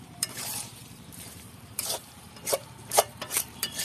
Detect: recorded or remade remade